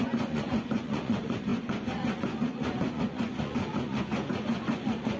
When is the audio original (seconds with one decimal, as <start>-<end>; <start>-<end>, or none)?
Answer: none